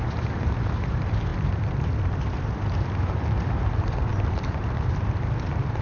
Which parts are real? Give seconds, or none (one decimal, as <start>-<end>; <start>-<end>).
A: none